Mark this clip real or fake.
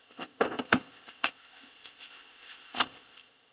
fake